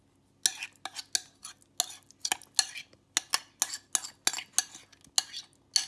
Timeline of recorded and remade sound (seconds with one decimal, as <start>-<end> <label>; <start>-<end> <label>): 0.0-5.9 recorded